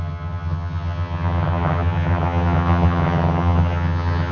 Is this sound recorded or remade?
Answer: remade